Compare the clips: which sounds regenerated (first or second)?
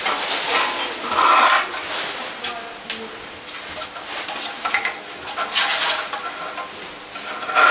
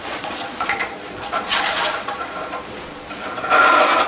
second